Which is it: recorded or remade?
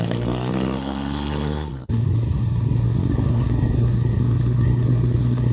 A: remade